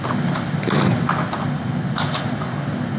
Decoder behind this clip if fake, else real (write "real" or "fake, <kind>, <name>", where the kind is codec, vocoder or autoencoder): real